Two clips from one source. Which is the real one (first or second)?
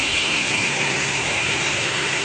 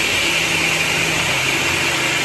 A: second